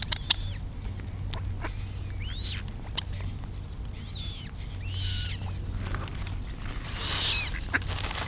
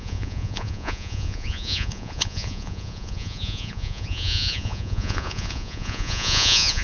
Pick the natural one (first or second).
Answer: first